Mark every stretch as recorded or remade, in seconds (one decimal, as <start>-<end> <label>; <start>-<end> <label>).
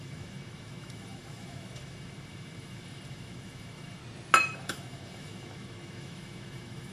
0.0-4.0 remade; 4.0-4.5 recorded; 4.5-6.9 remade